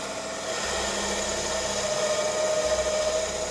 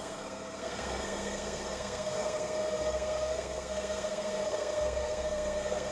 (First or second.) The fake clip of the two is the second